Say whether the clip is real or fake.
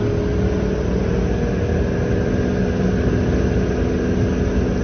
real